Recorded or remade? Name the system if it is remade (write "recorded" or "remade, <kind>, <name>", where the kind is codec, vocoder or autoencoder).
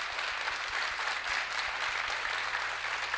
recorded